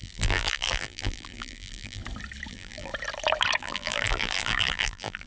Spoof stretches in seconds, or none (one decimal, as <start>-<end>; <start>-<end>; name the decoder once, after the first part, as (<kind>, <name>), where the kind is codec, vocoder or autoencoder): 0.0-2.0 (vocoder, BigVGAN v2); 2.5-2.9; 3.6-5.3